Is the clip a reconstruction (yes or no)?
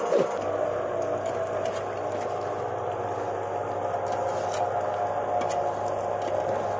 no